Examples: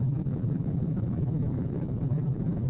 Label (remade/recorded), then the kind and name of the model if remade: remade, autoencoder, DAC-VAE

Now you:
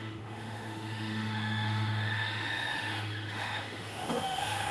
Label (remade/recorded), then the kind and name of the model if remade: remade, autoencoder, DAC-VAE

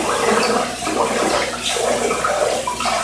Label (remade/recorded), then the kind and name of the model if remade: recorded